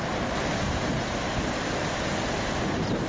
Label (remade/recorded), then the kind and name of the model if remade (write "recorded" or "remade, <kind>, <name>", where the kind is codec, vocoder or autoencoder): recorded